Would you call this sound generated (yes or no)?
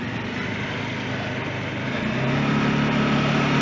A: no